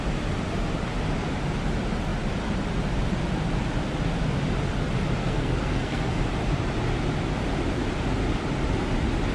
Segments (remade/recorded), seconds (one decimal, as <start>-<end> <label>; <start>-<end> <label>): 0.0-5.2 recorded; 5.2-6.2 remade; 6.2-9.3 recorded